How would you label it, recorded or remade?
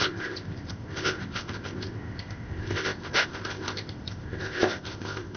remade